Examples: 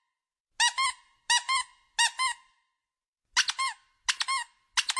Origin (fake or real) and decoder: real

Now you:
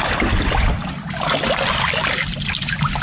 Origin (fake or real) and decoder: real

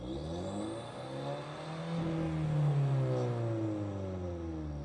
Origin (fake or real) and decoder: real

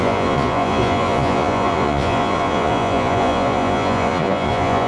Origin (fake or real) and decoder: fake, vocoder, Vocos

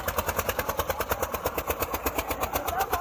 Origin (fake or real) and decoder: real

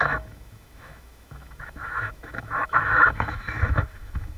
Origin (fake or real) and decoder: fake, autoencoder, DAC-VAE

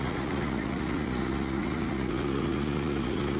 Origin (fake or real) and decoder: fake, vocoder, Vocos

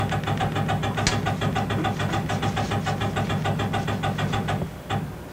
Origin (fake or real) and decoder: real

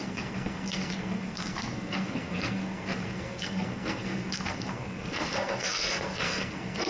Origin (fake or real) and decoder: fake, codec, SNAC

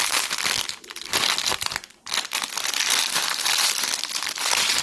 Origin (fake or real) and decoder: real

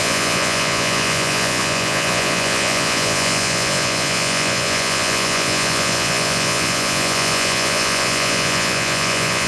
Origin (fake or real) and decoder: fake, vocoder, Vocos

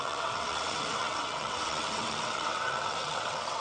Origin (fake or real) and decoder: fake, vocoder, WaveNeXt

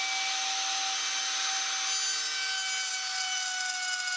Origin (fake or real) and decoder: real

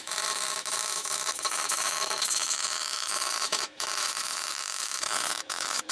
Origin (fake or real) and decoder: fake, autoencoder, DAC-VAE